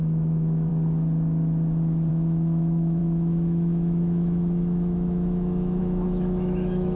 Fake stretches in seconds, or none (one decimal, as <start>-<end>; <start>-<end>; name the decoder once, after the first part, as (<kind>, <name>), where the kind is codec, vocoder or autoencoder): 0.0-0.7 (autoencoder, DAC-VAE); 2.1-7.0